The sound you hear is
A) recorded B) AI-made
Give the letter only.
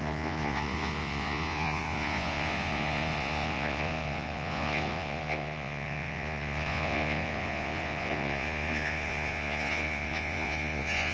B